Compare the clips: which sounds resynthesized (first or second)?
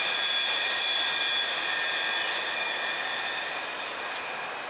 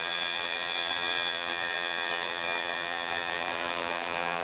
second